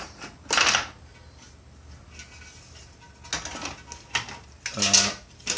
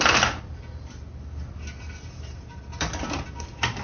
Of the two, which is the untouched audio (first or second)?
first